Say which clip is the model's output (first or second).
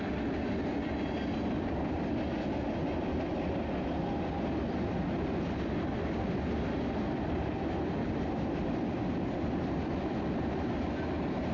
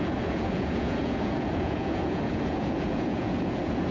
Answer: second